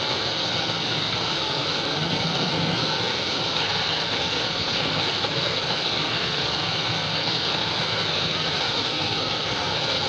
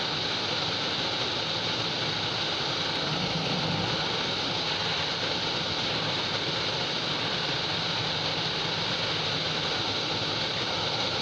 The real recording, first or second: second